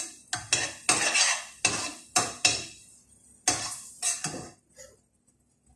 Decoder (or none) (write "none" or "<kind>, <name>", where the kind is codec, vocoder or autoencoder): none